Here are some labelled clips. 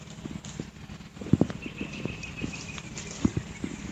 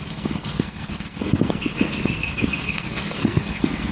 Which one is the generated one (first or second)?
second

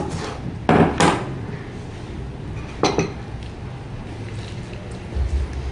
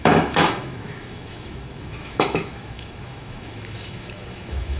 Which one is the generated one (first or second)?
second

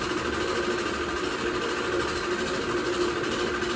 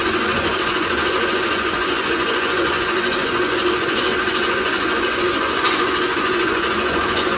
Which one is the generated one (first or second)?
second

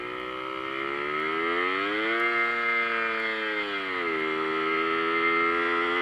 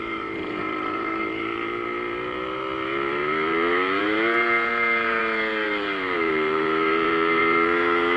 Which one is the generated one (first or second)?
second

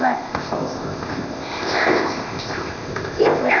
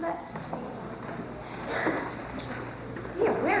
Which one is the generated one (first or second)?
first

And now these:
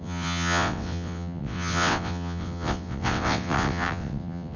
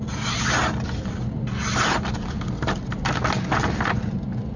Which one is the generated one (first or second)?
first